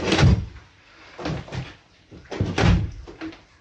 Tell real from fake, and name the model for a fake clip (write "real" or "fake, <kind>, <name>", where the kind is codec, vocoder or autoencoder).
fake, vocoder, BigVGAN v2